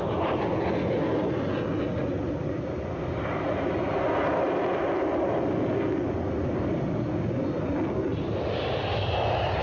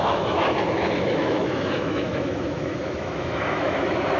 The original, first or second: first